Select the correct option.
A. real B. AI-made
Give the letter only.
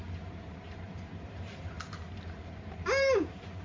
B